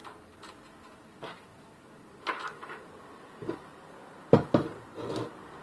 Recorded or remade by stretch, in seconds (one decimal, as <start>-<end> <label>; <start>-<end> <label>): 0.0-0.5 remade; 0.5-1.5 recorded; 1.5-4.3 remade; 4.3-5.6 recorded